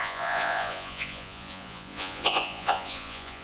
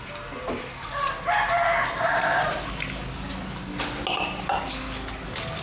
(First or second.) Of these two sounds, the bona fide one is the second